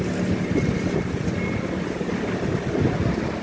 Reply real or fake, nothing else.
real